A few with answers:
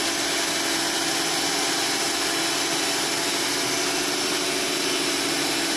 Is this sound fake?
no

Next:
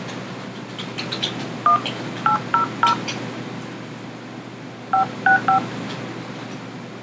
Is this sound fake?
no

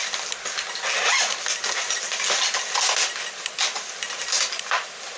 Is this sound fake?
no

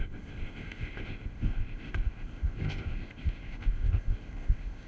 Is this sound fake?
yes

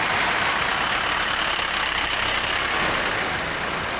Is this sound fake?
no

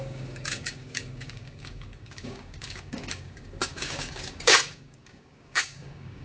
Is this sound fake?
yes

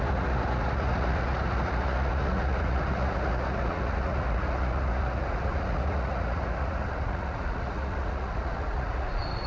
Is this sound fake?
yes